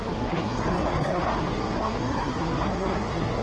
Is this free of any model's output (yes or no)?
no